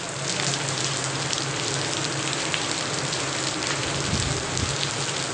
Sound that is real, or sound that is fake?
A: real